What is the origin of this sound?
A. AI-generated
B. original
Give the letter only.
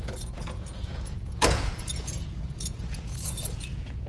A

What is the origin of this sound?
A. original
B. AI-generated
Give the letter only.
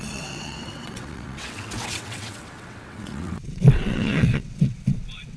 B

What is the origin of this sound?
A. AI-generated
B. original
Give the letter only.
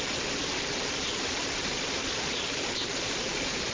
B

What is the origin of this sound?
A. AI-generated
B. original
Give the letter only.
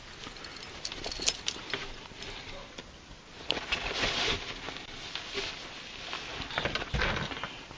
B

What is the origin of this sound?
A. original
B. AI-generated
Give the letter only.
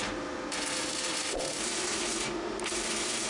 A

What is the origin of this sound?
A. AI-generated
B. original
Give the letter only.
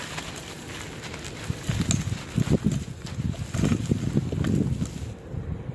B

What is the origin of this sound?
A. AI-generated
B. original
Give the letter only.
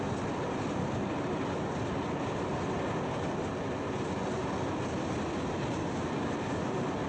B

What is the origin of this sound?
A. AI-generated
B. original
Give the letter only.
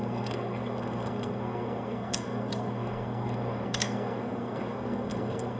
A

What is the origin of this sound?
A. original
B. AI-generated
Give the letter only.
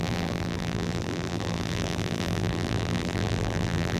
B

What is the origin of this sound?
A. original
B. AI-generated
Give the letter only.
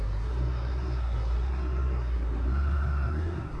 B